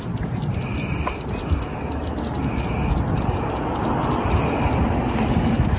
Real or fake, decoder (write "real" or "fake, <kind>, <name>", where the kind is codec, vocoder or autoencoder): real